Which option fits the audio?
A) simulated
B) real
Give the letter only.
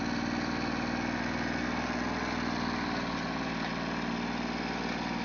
B